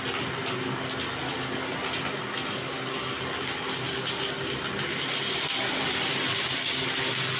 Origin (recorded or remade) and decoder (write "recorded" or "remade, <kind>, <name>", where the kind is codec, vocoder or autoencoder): recorded